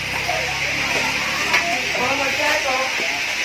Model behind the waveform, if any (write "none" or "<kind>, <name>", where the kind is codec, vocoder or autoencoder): none